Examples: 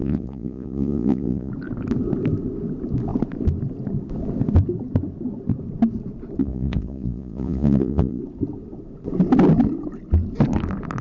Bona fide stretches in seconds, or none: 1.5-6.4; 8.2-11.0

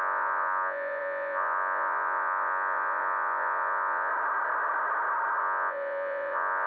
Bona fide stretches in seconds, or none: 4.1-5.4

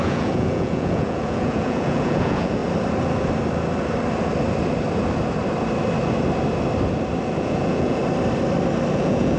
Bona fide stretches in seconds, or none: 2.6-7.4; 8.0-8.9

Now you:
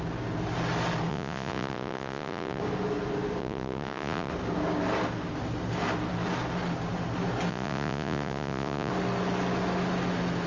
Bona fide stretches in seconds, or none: 0.0-1.1; 2.6-3.4; 4.3-7.5; 8.9-10.5

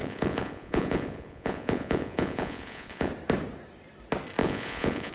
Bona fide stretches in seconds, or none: 3.1-4.4

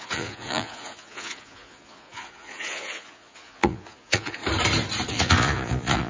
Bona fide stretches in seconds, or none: 4.4-5.1

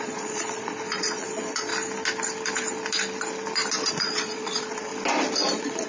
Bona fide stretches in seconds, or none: 1.7-3.9; 4.9-5.5